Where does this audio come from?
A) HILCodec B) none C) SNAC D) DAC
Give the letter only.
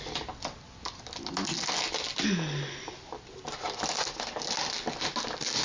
B